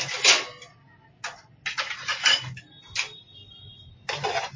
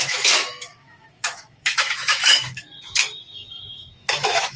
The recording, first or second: first